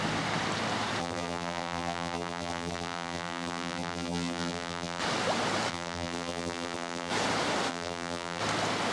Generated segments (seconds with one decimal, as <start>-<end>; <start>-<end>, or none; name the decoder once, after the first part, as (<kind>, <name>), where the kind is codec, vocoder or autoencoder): 1.0-5.0 (vocoder, BigVGAN v2); 5.7-7.1; 7.7-8.4